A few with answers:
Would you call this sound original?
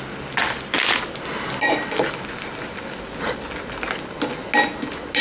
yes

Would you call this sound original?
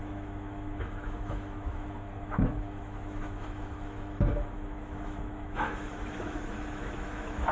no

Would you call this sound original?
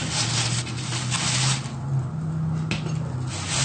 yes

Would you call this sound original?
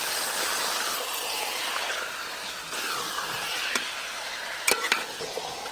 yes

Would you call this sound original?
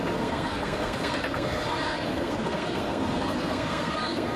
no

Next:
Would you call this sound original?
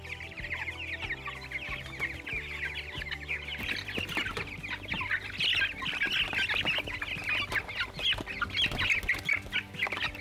yes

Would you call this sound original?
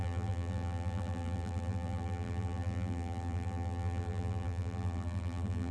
no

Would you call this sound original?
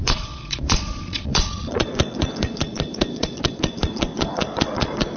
no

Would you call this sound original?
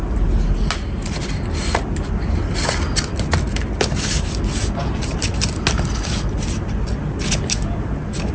yes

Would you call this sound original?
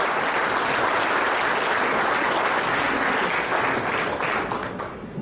yes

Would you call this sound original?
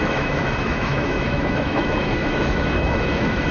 no